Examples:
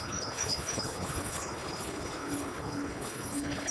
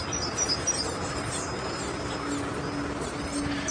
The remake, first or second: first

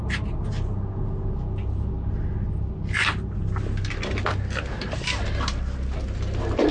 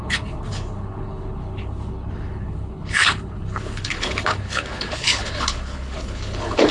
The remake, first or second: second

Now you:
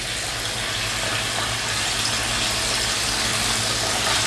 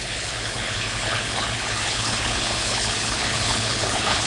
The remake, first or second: second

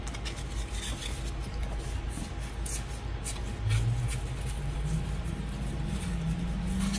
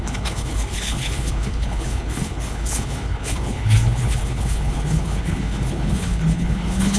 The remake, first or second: second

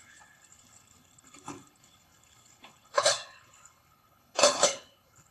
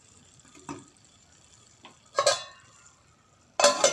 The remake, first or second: first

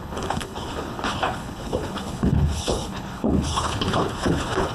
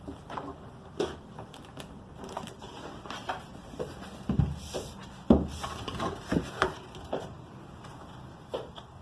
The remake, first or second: first